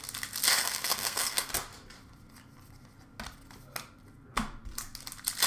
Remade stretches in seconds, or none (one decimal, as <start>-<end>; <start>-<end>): 0.5-1.5

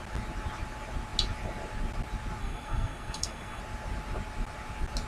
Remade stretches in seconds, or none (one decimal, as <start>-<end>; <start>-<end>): 2.4-3.6

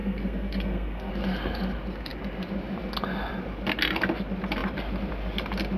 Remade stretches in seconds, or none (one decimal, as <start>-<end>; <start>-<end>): 0.0-1.1

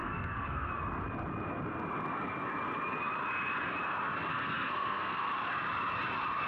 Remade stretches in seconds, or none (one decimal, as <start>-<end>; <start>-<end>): 0.0-0.7; 4.3-5.3

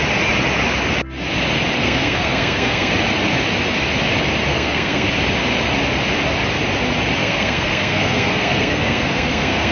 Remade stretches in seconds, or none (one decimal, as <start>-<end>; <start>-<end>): 1.8-2.9; 4.5-5.1; 7.2-9.7

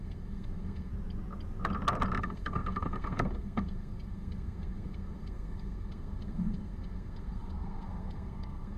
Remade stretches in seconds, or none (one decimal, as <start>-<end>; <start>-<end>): 0.0-0.9; 2.2-8.8

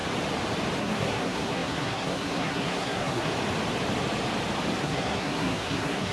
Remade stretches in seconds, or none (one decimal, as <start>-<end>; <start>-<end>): 0.8-3.3; 4.8-6.1